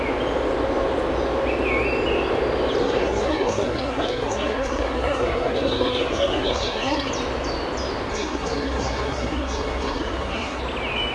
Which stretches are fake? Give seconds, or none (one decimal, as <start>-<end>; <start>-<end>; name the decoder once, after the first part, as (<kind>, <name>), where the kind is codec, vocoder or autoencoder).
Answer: 2.8-7.1 (codec, SNAC); 8.1-10.6